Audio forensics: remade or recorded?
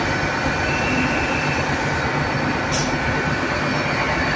recorded